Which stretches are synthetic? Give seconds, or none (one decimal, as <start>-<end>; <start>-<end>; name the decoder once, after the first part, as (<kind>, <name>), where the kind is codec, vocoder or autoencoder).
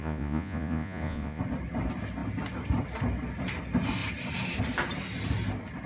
0.0-1.4 (vocoder, Vocos)